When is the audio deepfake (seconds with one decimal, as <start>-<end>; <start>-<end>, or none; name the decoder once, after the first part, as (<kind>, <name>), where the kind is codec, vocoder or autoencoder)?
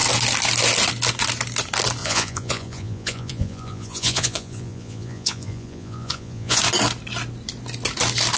2.0-6.6 (vocoder, Vocos)